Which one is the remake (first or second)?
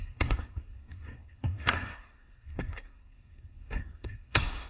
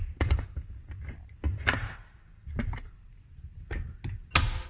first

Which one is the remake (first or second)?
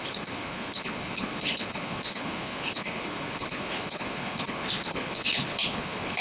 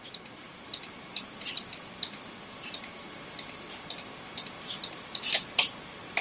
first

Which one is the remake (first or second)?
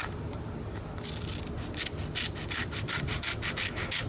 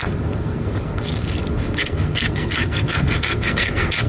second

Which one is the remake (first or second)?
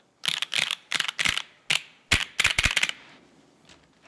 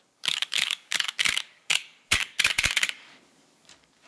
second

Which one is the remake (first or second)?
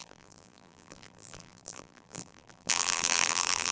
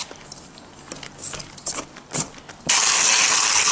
first